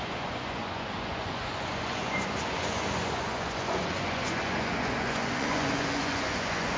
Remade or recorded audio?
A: remade